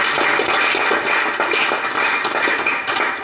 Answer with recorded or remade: recorded